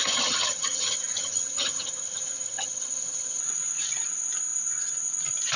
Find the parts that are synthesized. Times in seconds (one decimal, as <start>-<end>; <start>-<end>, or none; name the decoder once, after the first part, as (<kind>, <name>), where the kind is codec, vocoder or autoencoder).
0.0-3.4 (vocoder, HiFi-GAN)